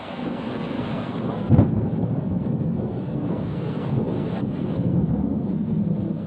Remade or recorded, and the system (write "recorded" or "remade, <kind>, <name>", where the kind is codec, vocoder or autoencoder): remade, codec, SNAC